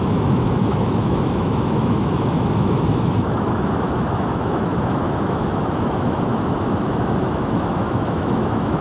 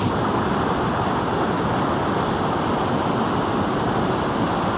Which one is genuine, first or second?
second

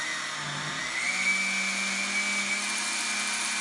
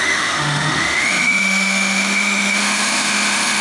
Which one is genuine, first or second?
first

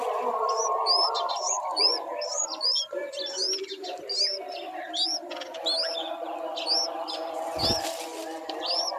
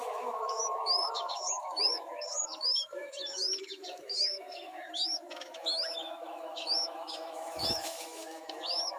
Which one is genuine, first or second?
first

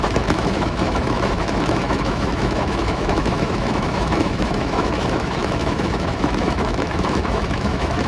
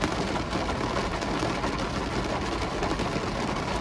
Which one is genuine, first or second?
second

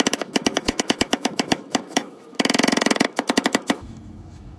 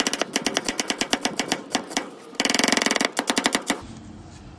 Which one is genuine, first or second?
second